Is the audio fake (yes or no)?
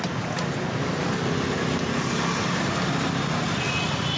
no